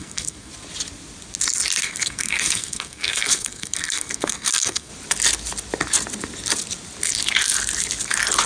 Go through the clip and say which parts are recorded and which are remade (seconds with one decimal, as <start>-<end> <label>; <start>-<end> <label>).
0.0-0.5 remade; 0.5-1.8 recorded; 1.8-4.9 remade; 4.9-8.5 recorded